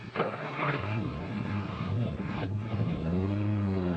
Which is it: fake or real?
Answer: fake